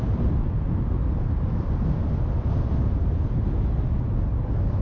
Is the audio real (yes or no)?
yes